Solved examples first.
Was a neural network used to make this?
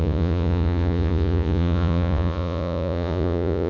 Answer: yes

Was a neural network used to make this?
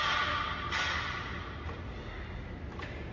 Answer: no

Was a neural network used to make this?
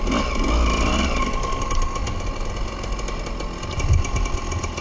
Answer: no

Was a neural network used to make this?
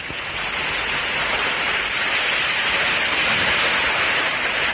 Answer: no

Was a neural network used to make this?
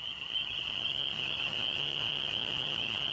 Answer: yes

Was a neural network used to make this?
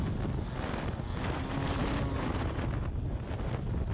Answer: no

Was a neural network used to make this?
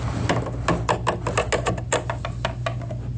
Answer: no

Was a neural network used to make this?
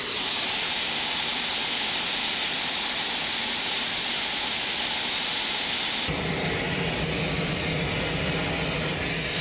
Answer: no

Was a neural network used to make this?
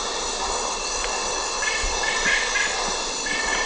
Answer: no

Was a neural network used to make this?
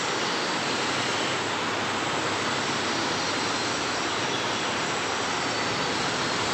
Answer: no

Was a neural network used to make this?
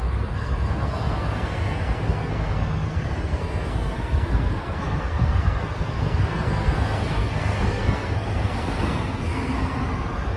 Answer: yes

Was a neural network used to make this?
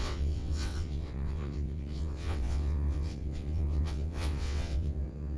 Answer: yes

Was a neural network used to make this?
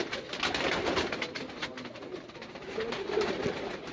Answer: no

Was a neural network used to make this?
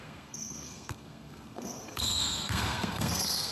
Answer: yes